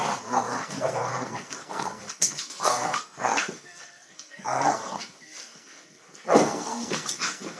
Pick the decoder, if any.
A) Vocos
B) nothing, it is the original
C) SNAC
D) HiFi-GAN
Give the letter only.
C